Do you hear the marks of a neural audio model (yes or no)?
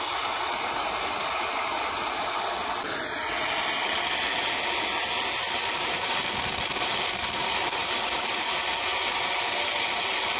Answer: no